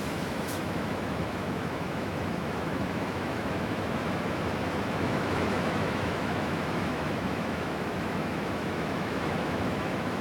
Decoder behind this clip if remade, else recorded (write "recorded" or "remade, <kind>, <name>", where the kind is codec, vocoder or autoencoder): remade, autoencoder, DAC-VAE